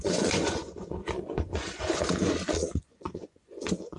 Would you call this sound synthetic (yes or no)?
yes